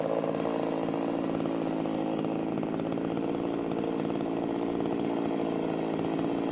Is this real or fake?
real